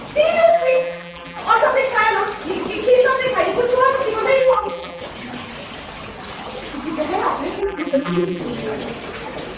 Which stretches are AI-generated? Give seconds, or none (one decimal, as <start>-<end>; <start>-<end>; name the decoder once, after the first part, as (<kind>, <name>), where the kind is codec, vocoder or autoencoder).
0.5-1.4 (vocoder, BigVGAN v2); 4.4-5.0; 7.6-8.4

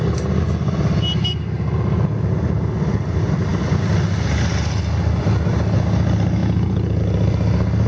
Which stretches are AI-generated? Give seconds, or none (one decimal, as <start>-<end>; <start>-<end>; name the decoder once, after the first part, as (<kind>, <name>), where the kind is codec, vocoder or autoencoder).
6.4-7.0 (vocoder, Vocos)

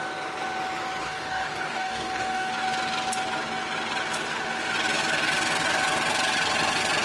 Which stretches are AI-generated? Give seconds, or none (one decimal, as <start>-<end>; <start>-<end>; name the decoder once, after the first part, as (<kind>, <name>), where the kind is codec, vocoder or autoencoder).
1.0-2.5 (codec, DAC)

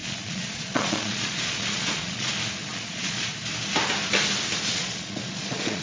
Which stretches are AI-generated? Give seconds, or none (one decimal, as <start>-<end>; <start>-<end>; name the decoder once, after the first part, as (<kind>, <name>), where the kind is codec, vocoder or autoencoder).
0.0-2.3 (vocoder, Vocos); 2.7-3.3; 4.7-5.8